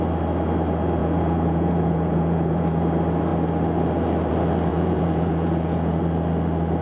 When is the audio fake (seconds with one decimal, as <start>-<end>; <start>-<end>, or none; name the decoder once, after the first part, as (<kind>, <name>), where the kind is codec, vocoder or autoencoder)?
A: 1.0-2.8 (vocoder, Vocos); 4.7-6.0